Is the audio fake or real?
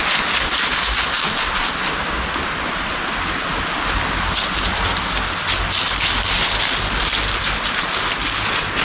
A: real